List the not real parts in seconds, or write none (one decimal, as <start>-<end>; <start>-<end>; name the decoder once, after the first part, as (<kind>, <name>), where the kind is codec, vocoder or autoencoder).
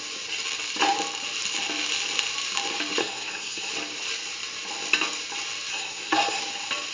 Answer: 3.0-3.7 (codec, SNAC); 5.7-6.4